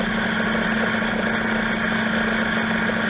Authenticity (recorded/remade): recorded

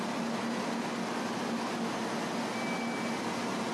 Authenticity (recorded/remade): recorded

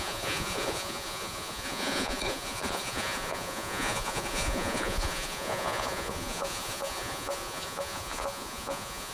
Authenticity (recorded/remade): remade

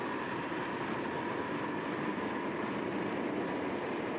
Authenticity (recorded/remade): recorded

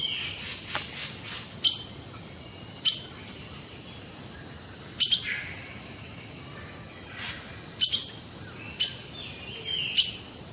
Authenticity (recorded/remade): recorded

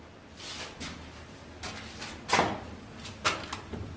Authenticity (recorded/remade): recorded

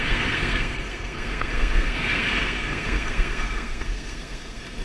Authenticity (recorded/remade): remade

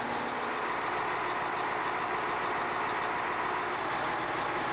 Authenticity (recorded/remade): recorded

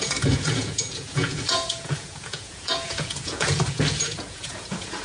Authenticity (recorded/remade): remade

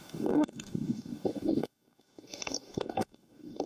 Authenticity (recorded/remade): remade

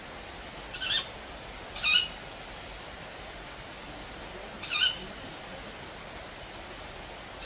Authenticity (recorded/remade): recorded